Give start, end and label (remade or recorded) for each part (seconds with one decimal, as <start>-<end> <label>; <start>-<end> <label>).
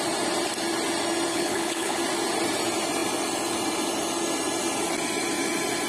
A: 0.0-1.3 recorded; 1.3-2.0 remade; 2.0-5.9 recorded